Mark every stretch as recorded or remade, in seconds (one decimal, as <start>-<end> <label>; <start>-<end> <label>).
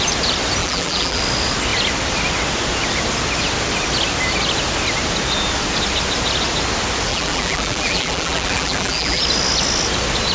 0.0-0.6 recorded; 0.6-1.2 remade; 1.2-7.1 recorded; 7.1-9.2 remade; 9.2-10.3 recorded